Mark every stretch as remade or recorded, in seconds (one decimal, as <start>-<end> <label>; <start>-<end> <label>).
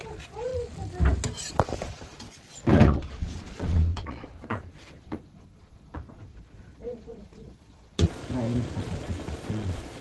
0.0-0.5 remade; 0.5-1.5 recorded; 1.5-8.2 remade; 8.2-8.8 recorded; 8.8-10.0 remade